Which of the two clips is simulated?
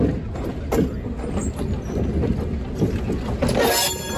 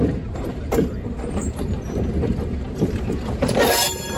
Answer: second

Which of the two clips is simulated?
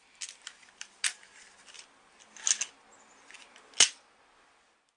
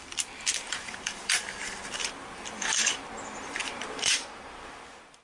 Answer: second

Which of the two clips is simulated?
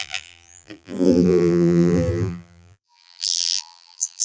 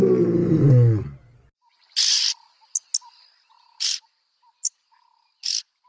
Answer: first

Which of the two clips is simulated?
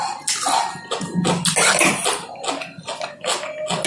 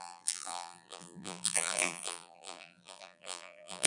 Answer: second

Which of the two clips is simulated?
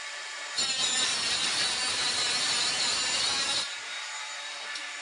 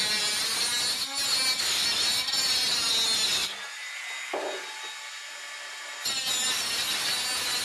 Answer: first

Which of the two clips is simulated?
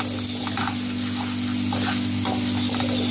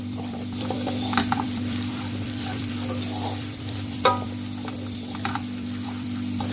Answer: second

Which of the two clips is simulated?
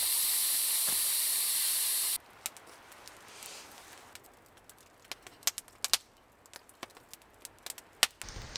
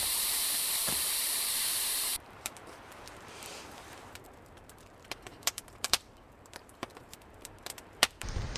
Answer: second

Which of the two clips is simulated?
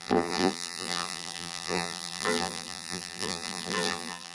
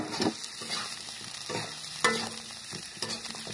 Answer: first